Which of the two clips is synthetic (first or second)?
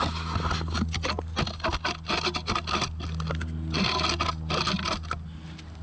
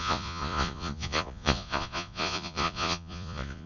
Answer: second